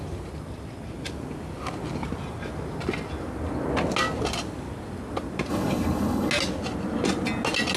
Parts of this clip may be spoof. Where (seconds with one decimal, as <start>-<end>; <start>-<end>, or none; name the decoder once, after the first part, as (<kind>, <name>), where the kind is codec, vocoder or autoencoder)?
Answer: 5.5-6.3 (codec, HILCodec)